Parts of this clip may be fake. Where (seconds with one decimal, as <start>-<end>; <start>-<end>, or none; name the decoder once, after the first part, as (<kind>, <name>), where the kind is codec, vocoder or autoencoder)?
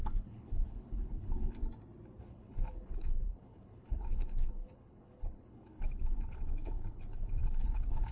0.0-1.6 (codec, HILCodec); 2.2-8.1